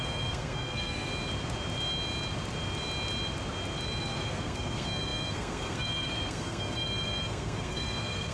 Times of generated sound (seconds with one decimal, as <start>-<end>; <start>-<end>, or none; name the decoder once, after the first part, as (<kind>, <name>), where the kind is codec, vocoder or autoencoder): 0.0-1.1 (codec, SNAC); 4.0-8.3